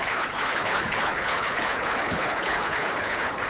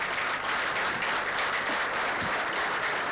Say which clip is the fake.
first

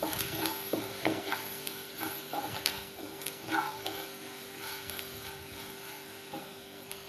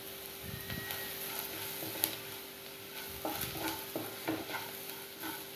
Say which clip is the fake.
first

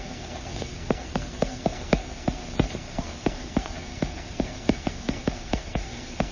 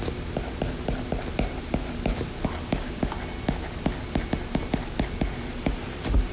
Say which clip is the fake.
first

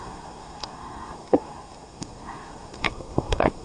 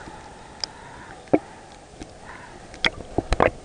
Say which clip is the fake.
first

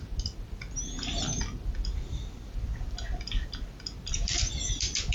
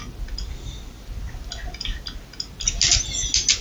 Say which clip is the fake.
first